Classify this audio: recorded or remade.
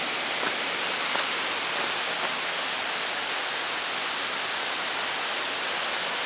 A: recorded